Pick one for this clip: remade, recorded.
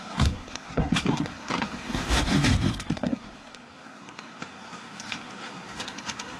remade